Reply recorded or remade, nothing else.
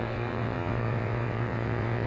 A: remade